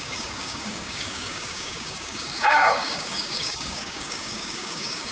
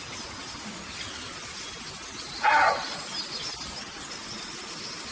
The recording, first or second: second